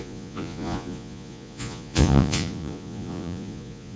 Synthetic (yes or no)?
yes